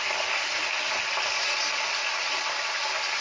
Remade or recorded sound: recorded